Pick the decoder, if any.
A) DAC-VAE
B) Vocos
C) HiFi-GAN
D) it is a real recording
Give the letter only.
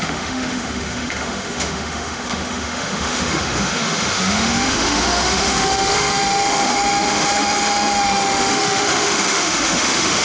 A